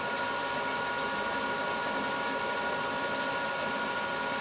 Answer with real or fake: real